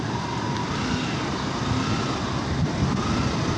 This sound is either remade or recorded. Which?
recorded